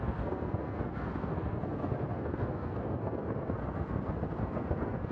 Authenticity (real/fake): fake